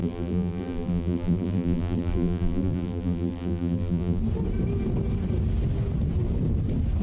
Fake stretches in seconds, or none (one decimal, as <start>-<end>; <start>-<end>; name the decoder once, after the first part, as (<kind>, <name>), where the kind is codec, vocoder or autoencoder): 0.0-4.2 (vocoder, BigVGAN v2)